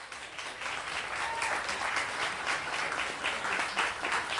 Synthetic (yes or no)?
no